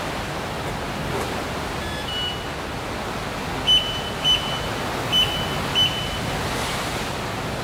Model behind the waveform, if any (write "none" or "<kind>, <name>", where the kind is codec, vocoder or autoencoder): none